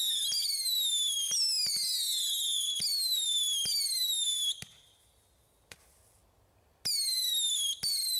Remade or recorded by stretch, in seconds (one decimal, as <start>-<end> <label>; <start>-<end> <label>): 0.0-8.2 recorded